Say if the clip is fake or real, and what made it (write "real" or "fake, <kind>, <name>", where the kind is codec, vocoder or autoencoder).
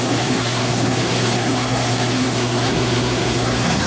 fake, codec, SNAC